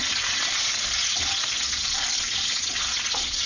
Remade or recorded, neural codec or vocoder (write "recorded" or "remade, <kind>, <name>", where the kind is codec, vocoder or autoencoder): remade, vocoder, Vocos